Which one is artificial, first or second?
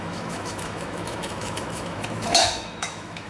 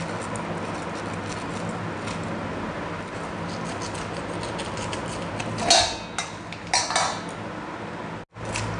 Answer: first